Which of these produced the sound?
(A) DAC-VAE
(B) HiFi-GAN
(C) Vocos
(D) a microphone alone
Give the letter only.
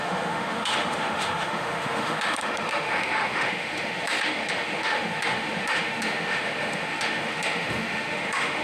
A